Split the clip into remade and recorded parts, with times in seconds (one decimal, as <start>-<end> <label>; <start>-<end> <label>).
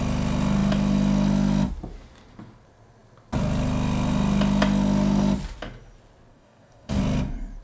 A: 0.0-6.3 recorded; 6.3-7.0 remade; 7.0-7.6 recorded